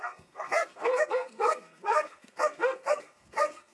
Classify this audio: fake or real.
fake